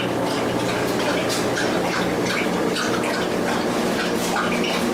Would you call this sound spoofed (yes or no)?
no